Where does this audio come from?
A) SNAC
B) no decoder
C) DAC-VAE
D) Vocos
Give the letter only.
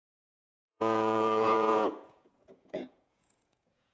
D